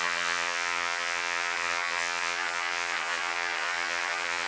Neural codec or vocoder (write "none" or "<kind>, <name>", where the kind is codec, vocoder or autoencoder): vocoder, HiFi-GAN